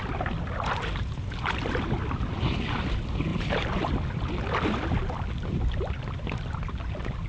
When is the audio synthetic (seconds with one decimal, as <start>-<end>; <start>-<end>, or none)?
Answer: 3.3-3.9